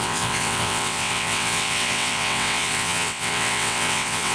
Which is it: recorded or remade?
remade